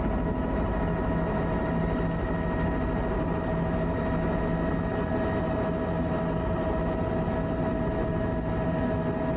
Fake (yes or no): no